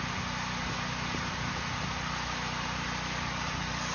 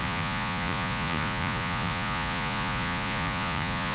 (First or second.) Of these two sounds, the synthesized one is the second